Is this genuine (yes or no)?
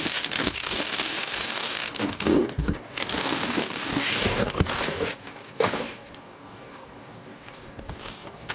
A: no